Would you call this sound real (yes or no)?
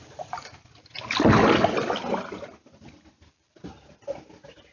yes